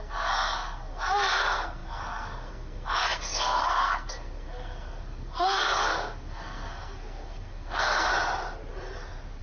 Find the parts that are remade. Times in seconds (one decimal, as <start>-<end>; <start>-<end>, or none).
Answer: 0.0-8.1